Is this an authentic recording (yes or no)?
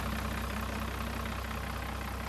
yes